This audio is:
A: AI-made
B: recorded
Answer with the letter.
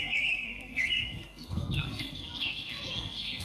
A